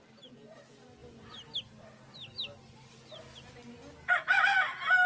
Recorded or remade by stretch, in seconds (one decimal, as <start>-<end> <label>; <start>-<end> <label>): 0.0-5.1 recorded